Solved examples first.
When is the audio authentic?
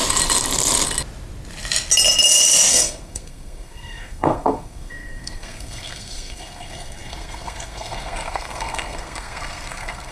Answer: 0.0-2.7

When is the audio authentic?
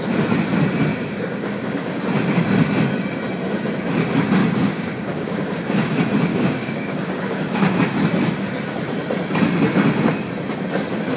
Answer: 0.0-0.9; 2.0-4.4; 5.6-6.3; 7.8-11.2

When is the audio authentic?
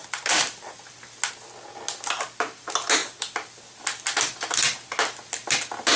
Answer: 0.0-6.0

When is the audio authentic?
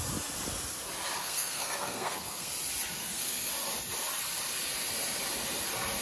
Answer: 0.0-1.2; 2.5-3.0; 3.5-6.0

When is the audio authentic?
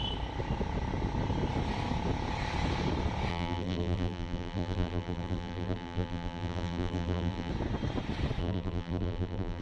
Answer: 0.0-3.3; 7.5-8.4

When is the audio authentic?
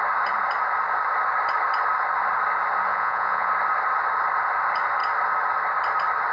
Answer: 0.0-2.9; 3.5-6.3